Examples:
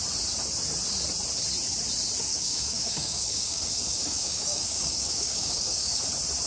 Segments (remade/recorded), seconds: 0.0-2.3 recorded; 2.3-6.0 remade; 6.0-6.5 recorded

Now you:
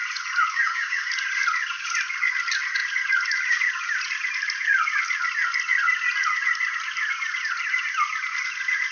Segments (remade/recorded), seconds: 0.0-0.5 recorded; 0.5-1.1 remade; 1.1-8.9 recorded

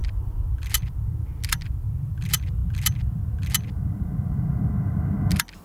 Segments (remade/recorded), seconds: 0.0-5.6 recorded

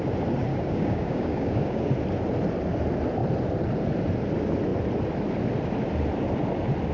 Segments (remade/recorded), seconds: 0.0-0.5 recorded; 0.5-1.9 remade; 1.9-6.9 recorded

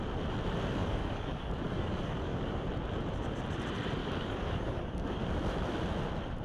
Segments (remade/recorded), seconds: 0.0-0.8 recorded; 0.8-2.7 remade; 2.7-4.0 recorded; 4.0-5.2 remade; 5.2-6.4 recorded

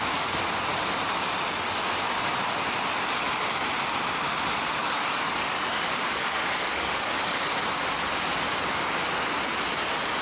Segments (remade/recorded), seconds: 0.0-4.8 recorded; 4.8-7.4 remade; 7.4-10.2 recorded

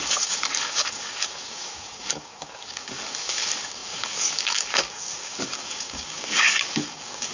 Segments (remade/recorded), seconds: 0.0-7.3 remade

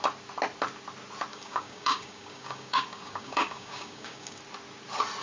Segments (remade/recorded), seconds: 0.0-1.3 recorded; 1.3-4.4 remade; 4.4-5.2 recorded